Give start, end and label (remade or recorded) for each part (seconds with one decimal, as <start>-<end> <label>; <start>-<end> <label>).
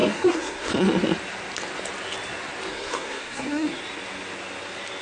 0.0-0.7 remade; 0.7-2.7 recorded; 2.7-3.8 remade; 3.8-5.0 recorded